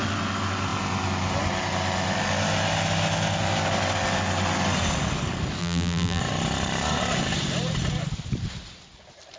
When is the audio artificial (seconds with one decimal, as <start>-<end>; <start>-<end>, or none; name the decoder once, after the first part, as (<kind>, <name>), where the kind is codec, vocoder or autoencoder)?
5.6-6.2 (vocoder, BigVGAN v2)